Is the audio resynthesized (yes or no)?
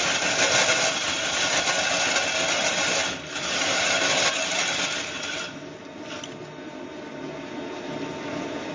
no